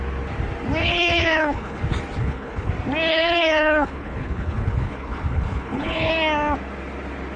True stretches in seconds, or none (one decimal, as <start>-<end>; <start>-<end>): 0.0-0.8; 1.8-2.2; 2.7-3.1; 6.1-7.4